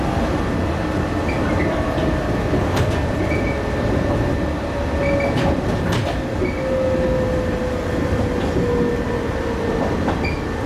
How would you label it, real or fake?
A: real